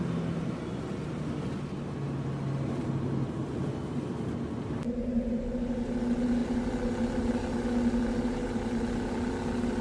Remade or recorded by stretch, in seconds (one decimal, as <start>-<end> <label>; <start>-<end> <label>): 0.0-9.8 recorded